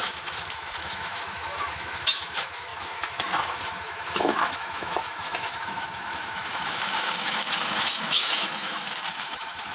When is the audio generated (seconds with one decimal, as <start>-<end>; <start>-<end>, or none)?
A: 0.0-9.7